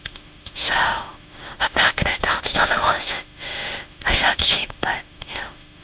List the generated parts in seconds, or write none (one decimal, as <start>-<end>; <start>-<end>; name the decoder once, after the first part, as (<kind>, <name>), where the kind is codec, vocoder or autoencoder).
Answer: 0.0-5.8 (autoencoder, DAC-VAE)